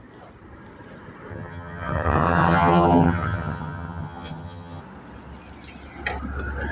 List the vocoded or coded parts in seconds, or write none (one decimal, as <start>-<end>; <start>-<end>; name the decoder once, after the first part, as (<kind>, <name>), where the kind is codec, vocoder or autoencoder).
1.3-4.8 (vocoder, HiFi-GAN)